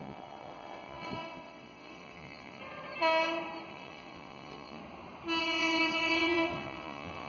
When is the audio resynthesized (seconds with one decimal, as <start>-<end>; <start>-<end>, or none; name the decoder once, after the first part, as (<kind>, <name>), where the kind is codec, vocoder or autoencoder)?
0.0-2.6 (vocoder, WaveNeXt); 3.7-4.8; 5.4-7.3

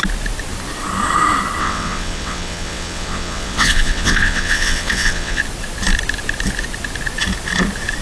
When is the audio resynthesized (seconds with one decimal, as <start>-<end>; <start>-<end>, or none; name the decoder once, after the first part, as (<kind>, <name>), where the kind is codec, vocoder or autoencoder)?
1.6-5.4 (vocoder, WaveNeXt)

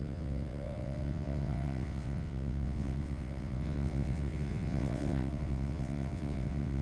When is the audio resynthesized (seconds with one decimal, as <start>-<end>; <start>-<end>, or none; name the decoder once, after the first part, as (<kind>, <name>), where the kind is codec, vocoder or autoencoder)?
0.0-6.8 (vocoder, WaveNeXt)

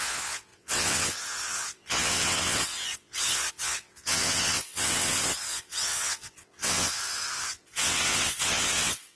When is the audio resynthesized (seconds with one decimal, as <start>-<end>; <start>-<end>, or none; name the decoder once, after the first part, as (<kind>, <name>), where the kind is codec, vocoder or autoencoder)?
0.0-9.2 (vocoder, WaveNeXt)

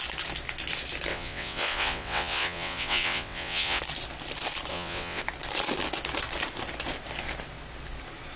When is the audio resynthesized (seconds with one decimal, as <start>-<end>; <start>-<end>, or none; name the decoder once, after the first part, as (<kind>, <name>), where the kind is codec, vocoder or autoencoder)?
1.1-3.8 (vocoder, WaveNeXt); 4.7-5.2

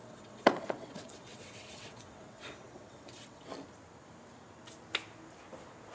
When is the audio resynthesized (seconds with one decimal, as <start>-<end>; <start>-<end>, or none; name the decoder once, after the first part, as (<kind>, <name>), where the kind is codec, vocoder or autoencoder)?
0.0-3.5 (vocoder, WaveNeXt)